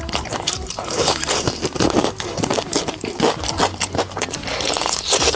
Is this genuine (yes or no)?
no